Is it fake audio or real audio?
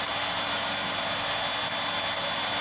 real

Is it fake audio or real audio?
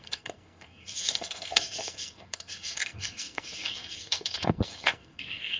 fake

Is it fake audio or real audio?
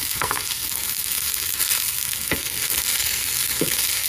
fake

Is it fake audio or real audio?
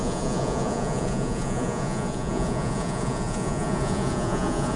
fake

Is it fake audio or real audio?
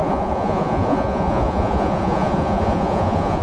fake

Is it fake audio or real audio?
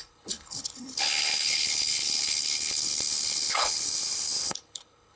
fake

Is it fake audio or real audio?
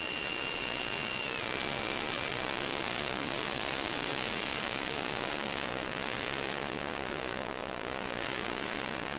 fake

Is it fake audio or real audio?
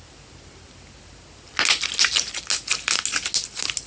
real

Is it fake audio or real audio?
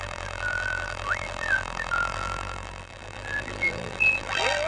fake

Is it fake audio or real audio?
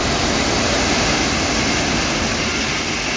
real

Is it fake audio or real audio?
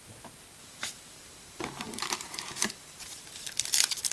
fake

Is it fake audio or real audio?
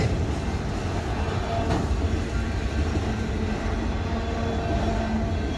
real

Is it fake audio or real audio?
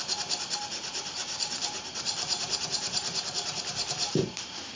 fake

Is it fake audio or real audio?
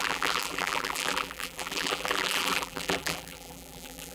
fake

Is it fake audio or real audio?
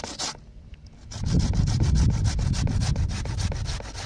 real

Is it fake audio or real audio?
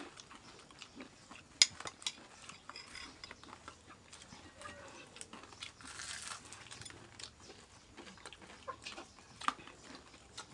real